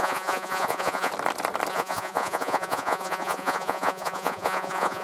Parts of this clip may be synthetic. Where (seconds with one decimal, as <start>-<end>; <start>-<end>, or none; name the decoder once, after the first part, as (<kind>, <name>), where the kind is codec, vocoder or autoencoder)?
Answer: 0.0-1.1 (vocoder, Vocos); 1.7-5.0